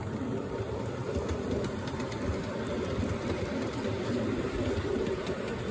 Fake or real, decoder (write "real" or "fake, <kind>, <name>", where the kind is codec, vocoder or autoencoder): real